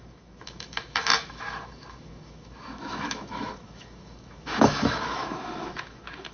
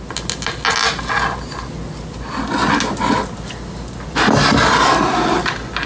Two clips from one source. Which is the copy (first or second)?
first